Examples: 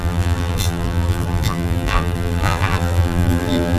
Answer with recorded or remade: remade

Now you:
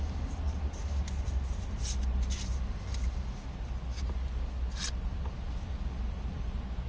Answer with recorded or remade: recorded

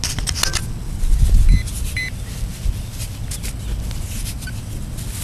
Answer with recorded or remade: recorded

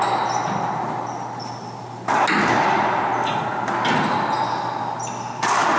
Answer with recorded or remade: recorded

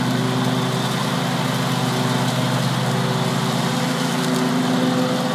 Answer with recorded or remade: recorded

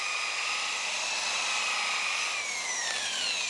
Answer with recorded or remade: recorded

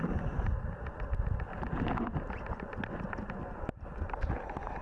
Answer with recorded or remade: recorded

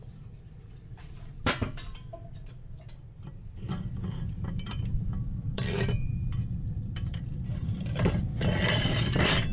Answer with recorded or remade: remade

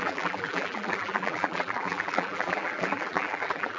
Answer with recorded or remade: remade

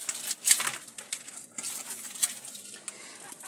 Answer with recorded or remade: recorded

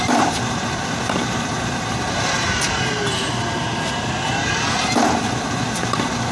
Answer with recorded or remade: remade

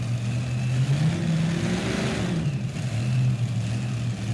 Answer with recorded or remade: recorded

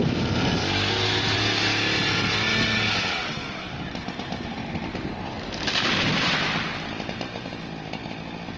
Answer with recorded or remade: recorded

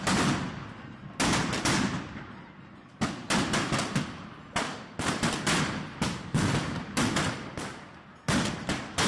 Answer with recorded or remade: recorded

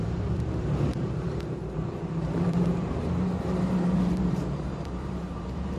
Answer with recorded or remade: remade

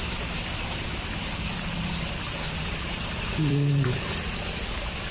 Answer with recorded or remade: remade